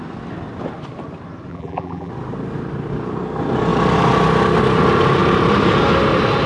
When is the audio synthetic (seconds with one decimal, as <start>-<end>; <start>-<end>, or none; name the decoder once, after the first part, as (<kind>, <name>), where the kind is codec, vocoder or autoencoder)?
1.5-2.1 (vocoder, BigVGAN v2)